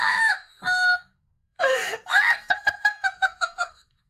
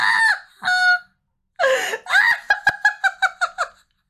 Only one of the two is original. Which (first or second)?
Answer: second